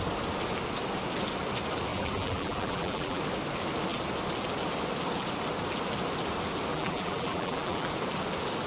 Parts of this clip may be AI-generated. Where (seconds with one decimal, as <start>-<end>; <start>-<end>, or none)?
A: 1.9-3.2; 6.7-7.9